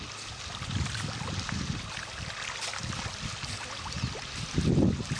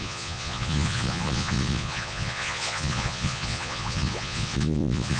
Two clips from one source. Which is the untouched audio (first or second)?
first